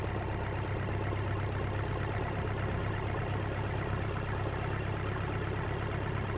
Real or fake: real